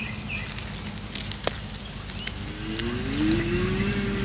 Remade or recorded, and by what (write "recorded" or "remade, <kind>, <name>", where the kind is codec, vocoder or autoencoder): recorded